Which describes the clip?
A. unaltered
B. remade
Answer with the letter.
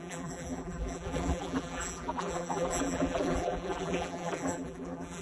B